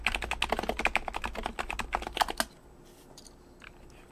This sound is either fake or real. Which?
real